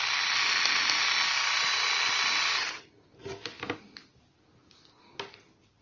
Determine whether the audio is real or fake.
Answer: real